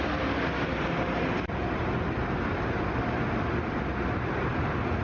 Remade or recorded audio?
recorded